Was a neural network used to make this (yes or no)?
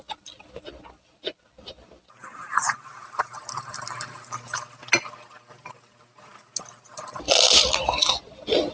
no